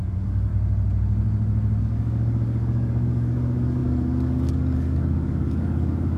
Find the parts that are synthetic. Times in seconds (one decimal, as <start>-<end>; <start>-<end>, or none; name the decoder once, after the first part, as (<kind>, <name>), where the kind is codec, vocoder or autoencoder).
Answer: 0.0-0.5 (codec, DAC); 1.8-6.2

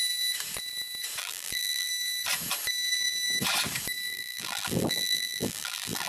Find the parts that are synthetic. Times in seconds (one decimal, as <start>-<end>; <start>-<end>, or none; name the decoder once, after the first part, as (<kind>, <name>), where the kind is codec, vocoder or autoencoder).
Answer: 1.2-1.9 (vocoder, BigVGAN v2); 4.1-6.1

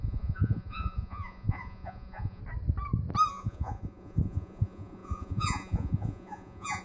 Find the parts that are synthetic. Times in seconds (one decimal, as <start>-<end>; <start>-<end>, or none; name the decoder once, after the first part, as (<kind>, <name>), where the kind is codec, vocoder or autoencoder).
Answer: 0.0-2.4 (vocoder, Vocos); 3.3-6.8

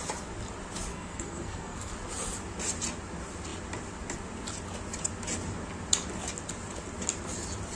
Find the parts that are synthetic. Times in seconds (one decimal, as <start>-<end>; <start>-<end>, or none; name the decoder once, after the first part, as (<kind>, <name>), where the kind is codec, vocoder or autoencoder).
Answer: 0.9-1.9 (codec, SNAC)

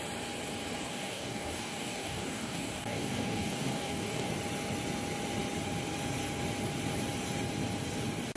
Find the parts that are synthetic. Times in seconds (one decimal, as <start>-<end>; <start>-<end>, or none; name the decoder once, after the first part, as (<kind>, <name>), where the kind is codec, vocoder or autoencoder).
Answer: 0.9-4.3 (codec, DAC)

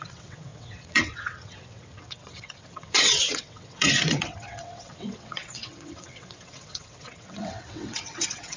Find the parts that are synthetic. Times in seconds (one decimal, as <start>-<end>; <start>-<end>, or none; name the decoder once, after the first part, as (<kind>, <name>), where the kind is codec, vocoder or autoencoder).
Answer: 0.0-8.6 (vocoder, WaveNeXt)